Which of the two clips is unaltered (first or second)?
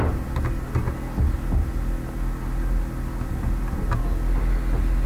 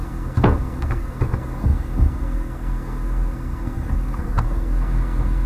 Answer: first